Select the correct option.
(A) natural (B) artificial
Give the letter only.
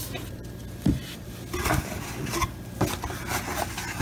A